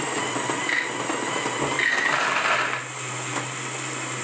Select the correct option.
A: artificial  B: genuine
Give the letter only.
B